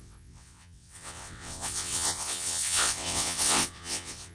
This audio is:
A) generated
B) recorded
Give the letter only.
A